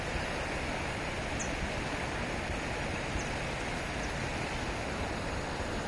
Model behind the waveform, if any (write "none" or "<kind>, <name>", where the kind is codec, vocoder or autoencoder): vocoder, BigVGAN v2